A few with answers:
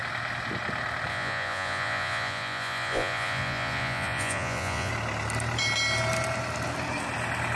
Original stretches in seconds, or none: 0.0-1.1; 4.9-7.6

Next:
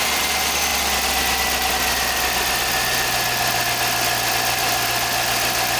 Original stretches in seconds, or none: 0.0-5.8

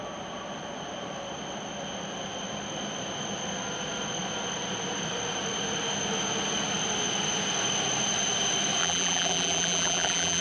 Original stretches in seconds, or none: 0.0-8.8